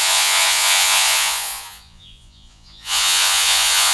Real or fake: fake